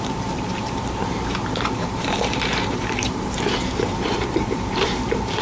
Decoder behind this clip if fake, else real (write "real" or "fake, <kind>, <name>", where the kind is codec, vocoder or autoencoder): fake, vocoder, BigVGAN v2